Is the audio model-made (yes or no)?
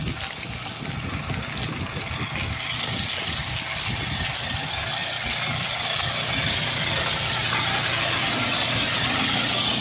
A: no